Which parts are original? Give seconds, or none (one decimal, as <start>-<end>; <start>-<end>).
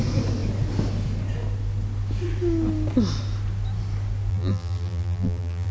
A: 0.0-4.3